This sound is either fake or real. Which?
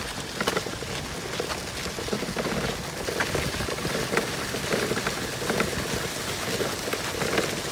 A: real